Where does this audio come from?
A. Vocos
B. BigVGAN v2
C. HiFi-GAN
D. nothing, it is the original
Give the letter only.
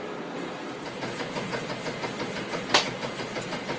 D